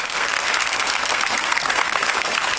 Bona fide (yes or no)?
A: no